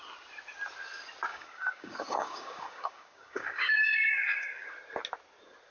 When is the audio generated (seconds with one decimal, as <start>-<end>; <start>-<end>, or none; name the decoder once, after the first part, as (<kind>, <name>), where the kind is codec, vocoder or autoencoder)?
1.3-4.7 (codec, DAC)